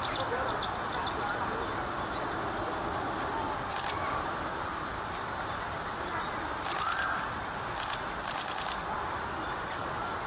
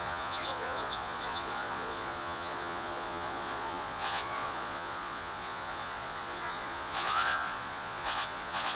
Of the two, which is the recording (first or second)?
first